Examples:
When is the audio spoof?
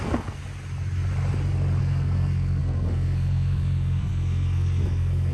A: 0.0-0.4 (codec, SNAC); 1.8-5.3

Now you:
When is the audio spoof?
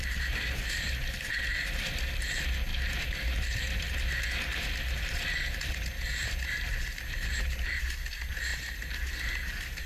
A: none